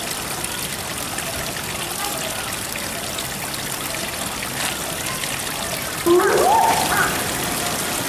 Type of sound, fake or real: real